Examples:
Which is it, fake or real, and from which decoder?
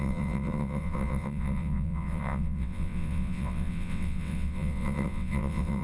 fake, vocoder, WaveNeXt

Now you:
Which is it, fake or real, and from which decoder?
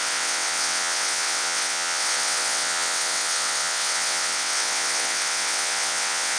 fake, vocoder, WaveNeXt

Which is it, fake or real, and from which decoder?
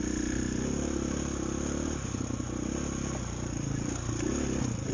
real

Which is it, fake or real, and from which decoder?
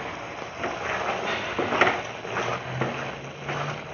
real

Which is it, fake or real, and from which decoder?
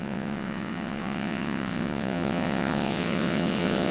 fake, vocoder, WaveNeXt